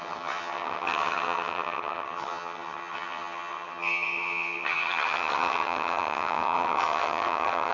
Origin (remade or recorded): remade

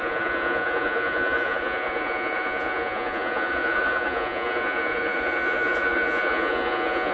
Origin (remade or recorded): remade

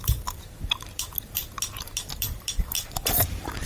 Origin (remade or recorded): remade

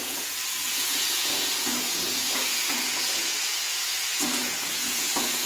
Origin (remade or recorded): remade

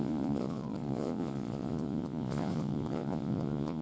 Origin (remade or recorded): remade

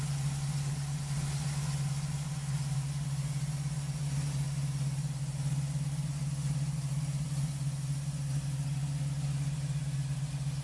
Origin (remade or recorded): recorded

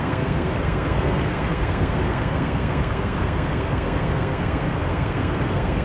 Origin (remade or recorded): remade